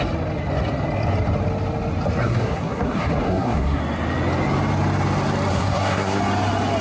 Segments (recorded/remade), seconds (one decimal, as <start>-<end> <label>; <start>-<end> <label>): 0.0-2.2 recorded; 2.2-3.8 remade; 3.8-5.5 recorded; 5.5-6.2 remade; 6.2-6.8 recorded